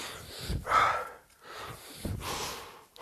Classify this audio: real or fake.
real